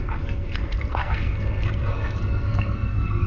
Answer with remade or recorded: remade